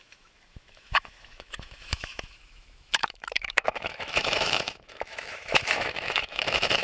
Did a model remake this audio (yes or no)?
yes